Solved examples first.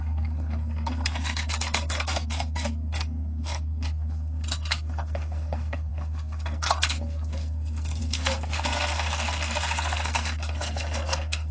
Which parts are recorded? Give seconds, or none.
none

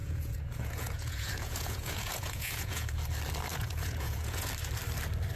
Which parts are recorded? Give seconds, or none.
3.0-3.5; 4.5-5.4

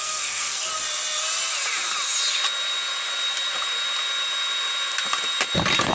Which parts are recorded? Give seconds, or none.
0.7-5.9

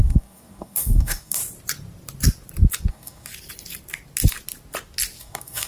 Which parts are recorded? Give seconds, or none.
1.4-2.9; 3.3-5.2

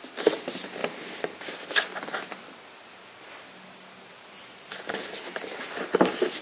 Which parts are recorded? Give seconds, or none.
0.0-6.4

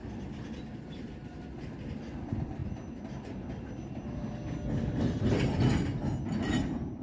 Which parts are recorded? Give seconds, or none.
0.0-7.0

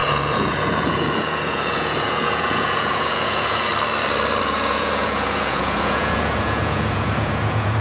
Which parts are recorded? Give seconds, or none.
3.7-4.4